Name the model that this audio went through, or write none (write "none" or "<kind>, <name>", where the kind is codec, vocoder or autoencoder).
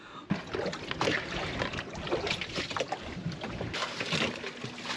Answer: none